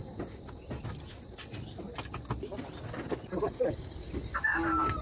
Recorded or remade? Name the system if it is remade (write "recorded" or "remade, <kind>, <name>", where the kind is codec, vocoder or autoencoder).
recorded